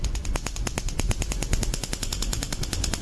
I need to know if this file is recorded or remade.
remade